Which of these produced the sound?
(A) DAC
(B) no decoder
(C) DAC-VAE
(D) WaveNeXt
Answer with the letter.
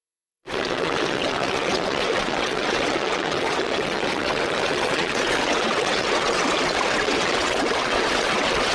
D